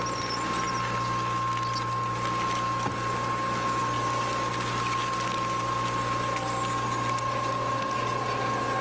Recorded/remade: recorded